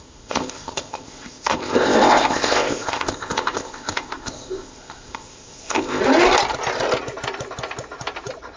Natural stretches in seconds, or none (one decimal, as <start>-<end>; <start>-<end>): 6.0-8.6